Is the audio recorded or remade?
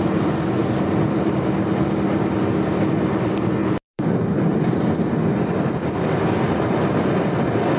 remade